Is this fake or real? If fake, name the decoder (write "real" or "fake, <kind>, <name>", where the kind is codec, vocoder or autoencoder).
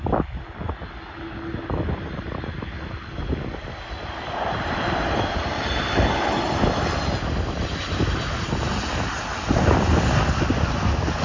real